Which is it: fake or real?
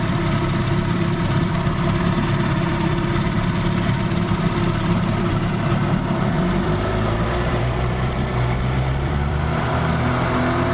fake